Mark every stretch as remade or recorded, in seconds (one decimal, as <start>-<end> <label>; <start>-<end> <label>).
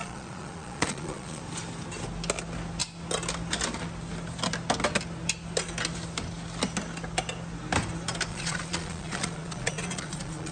0.0-1.4 remade; 1.4-8.3 recorded; 8.3-10.5 remade